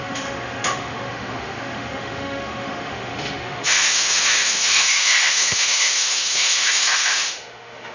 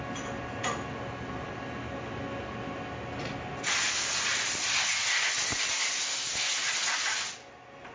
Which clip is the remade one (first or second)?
first